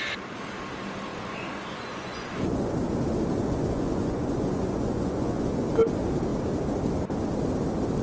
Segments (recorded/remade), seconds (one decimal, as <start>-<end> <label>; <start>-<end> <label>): 0.0-1.1 recorded; 1.1-2.7 remade; 2.7-3.4 recorded; 3.4-5.7 remade; 5.7-8.0 recorded

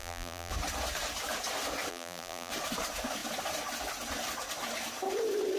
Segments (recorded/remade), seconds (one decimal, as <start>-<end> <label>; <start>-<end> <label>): 0.0-0.5 remade; 0.5-1.9 recorded; 1.9-2.5 remade; 2.5-5.6 recorded